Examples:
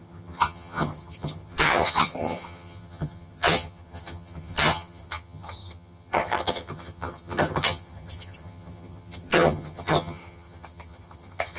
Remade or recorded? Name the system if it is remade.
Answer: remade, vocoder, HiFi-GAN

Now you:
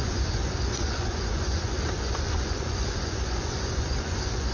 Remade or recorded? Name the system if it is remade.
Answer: remade, vocoder, Vocos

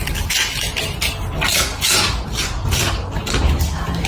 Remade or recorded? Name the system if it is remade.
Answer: remade, vocoder, BigVGAN v2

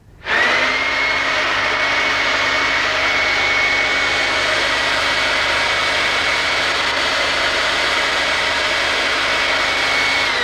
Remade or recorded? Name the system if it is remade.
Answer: remade, vocoder, BigVGAN v2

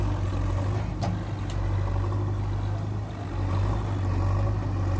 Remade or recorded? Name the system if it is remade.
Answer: recorded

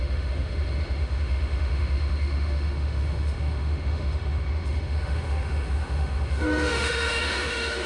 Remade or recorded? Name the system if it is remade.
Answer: remade, autoencoder, DAC-VAE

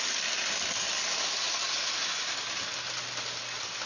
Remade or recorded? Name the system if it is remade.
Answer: recorded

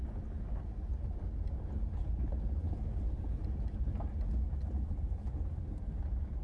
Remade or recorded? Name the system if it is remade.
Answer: recorded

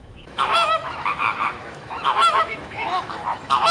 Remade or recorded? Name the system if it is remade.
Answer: remade, autoencoder, DAC-VAE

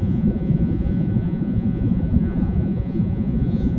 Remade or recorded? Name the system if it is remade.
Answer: remade, vocoder, Vocos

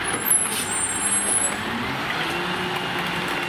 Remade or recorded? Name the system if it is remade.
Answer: recorded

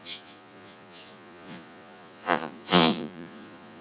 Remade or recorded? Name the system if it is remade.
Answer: remade, vocoder, Vocos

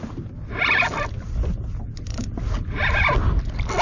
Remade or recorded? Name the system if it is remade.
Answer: recorded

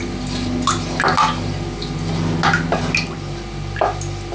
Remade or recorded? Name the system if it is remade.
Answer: recorded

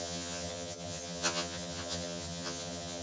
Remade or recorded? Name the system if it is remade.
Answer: remade, vocoder, HiFi-GAN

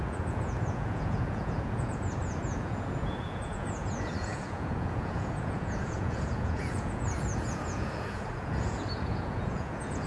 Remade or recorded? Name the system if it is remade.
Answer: remade, vocoder, Vocos